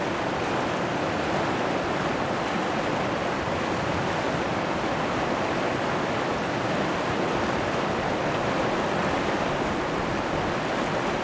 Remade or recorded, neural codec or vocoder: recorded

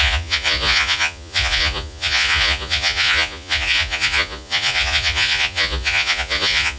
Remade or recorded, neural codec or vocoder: remade, vocoder, Vocos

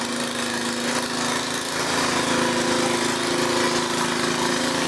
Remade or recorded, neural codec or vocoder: recorded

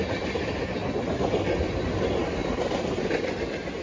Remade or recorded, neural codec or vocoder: recorded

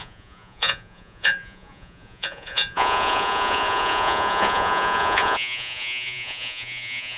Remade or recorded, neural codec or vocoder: remade, vocoder, Vocos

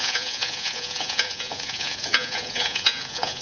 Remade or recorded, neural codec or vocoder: remade, vocoder, Vocos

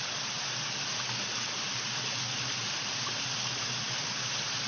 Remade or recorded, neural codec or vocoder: recorded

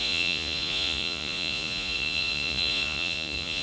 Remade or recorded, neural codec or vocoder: remade, vocoder, Vocos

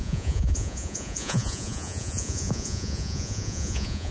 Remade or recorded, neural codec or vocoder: remade, vocoder, Vocos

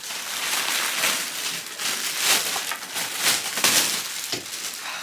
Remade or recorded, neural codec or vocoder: recorded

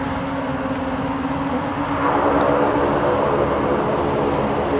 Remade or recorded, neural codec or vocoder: recorded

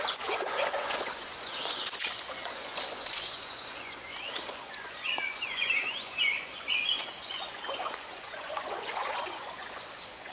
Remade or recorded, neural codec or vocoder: remade, vocoder, Vocos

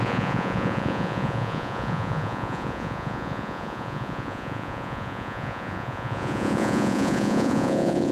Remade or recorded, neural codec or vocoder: remade, vocoder, Vocos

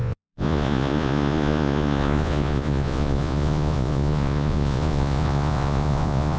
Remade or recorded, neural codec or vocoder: remade, vocoder, Vocos